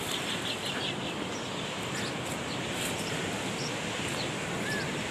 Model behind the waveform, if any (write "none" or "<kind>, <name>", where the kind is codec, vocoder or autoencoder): none